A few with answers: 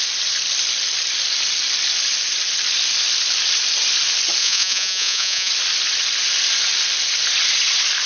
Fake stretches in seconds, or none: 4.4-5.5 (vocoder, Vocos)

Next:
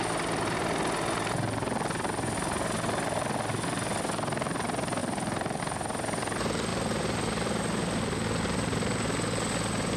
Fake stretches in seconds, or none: 5.0-5.6 (vocoder, BigVGAN v2); 6.7-8.0

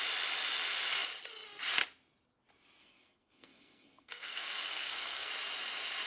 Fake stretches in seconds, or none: 2.8-5.3 (codec, SNAC)

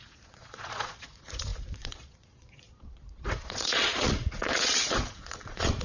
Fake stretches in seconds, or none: 0.0-5.8 (vocoder, Vocos)

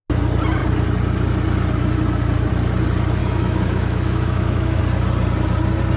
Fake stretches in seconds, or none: 3.2-4.8 (autoencoder, DAC-VAE)

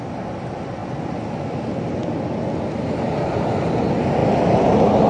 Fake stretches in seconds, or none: none